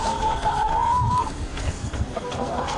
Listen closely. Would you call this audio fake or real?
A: fake